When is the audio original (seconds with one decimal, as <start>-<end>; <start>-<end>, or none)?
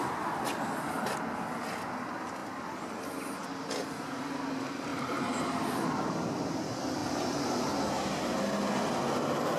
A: 0.0-4.9; 6.0-9.6